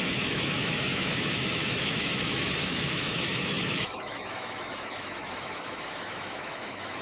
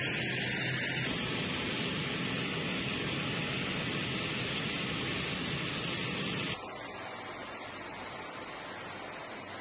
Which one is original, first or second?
second